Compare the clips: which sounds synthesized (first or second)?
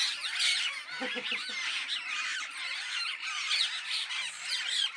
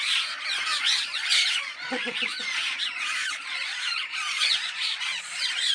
second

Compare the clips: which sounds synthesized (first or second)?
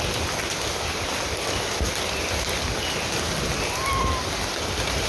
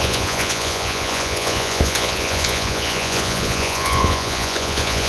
second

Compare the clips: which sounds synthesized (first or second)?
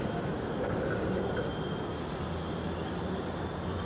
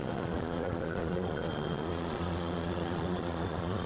second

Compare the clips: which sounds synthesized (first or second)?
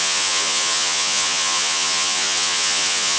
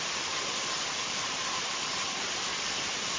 first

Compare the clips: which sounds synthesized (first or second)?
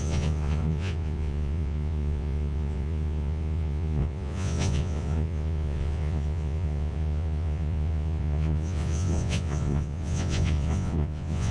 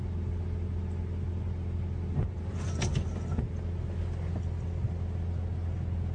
first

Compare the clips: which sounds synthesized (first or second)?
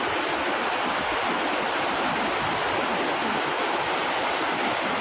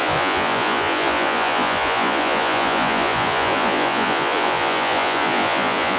second